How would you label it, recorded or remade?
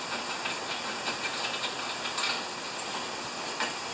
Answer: recorded